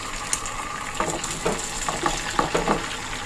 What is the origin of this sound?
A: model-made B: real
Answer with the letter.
B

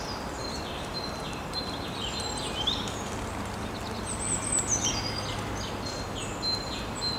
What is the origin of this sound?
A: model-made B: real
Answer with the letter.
B